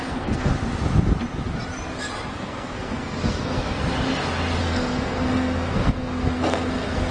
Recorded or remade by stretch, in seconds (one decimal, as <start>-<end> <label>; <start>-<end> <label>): 0.0-0.5 remade; 0.5-2.3 recorded; 2.3-3.8 remade; 3.8-4.6 recorded; 4.6-7.1 remade